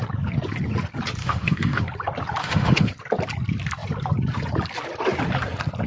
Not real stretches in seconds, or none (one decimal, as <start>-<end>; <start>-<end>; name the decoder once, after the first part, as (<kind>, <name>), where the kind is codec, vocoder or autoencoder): 1.2-1.9 (autoencoder, DAC-VAE); 2.4-2.9